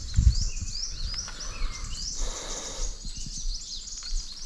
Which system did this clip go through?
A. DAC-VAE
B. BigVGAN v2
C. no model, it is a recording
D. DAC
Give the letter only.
C